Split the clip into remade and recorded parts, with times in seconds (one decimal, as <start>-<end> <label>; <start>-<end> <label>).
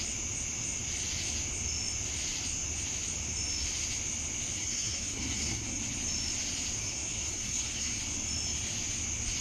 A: 0.0-4.6 recorded; 4.6-5.8 remade; 5.8-6.8 recorded; 6.8-8.0 remade; 8.0-9.4 recorded